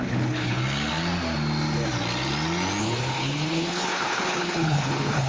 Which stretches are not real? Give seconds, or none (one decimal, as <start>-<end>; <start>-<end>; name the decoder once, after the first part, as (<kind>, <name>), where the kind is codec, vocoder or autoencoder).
0.0-0.6 (codec, HILCodec); 2.8-5.3